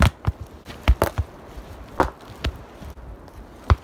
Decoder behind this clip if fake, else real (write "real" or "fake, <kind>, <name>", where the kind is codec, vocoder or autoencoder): real